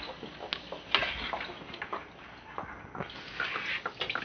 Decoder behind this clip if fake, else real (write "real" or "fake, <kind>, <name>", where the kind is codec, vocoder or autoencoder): real